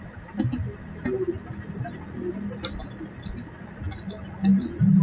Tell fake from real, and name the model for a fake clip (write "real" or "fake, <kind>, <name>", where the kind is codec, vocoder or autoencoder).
real